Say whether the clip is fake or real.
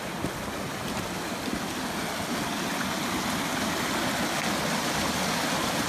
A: real